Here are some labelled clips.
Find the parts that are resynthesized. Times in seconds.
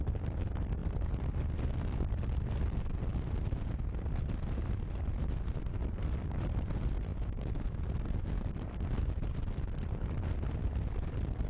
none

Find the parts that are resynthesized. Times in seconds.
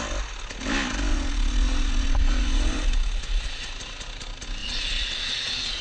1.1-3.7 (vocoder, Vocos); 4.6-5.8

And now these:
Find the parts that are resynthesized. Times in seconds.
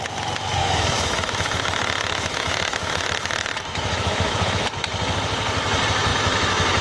0.6-4.7 (autoencoder, DAC-VAE); 6.1-6.8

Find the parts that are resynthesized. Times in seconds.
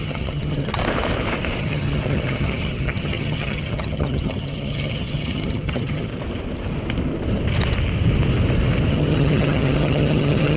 0.0-0.8 (vocoder, HiFi-GAN); 1.6-6.1; 8.9-10.6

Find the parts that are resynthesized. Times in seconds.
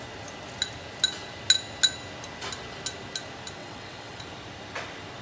3.6-4.2 (vocoder, WaveNeXt)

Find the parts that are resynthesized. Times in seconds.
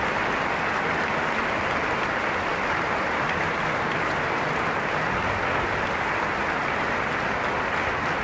none